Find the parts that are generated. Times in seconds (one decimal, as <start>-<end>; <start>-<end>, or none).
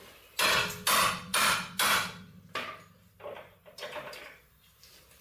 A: none